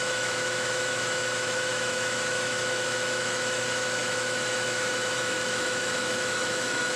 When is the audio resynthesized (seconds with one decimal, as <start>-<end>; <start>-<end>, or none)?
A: 0.0-7.0